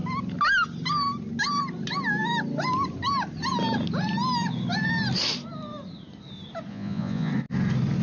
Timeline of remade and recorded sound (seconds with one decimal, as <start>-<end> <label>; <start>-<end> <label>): 0.0-6.7 recorded; 6.7-7.3 remade; 7.3-8.0 recorded